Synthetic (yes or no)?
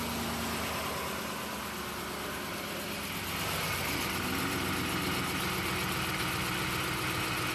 no